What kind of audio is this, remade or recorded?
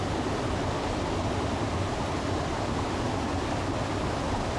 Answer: recorded